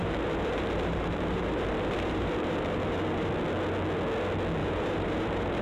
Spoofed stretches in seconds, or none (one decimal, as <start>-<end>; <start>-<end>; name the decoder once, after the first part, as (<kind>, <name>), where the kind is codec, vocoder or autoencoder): 0.0-3.3 (vocoder, BigVGAN v2); 4.6-5.6